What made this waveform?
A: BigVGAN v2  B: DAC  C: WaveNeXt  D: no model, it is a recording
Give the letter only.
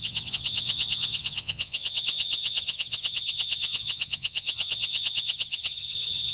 C